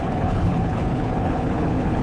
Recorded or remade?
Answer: remade